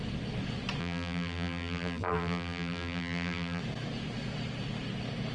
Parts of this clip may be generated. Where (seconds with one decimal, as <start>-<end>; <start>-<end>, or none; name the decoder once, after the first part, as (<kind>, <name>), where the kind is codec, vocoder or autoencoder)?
0.8-3.6 (vocoder, BigVGAN v2)